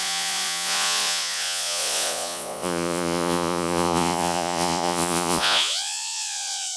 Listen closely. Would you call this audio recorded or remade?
remade